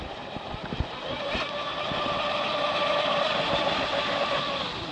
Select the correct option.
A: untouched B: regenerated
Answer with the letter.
A